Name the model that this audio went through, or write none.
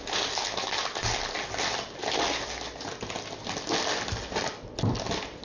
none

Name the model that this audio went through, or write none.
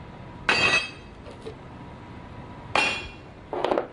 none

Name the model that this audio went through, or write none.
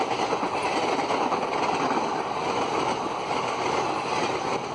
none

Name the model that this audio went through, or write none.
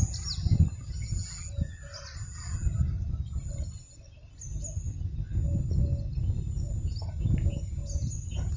none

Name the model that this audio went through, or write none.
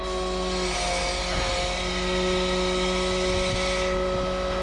none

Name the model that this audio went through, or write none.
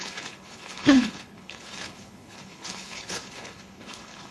codec, HILCodec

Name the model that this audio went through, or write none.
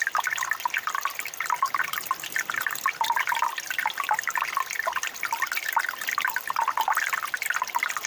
none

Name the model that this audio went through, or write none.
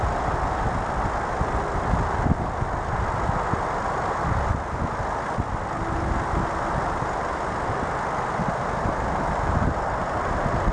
none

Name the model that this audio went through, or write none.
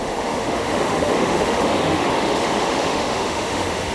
autoencoder, DAC-VAE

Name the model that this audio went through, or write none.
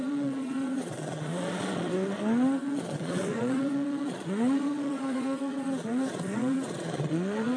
vocoder, Vocos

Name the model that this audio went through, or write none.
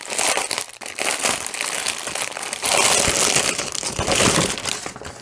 none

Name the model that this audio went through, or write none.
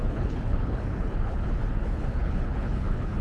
codec, HILCodec